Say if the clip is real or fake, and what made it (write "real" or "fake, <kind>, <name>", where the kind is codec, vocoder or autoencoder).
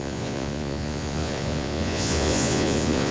fake, vocoder, Vocos